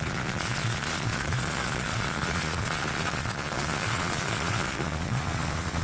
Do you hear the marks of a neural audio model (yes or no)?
yes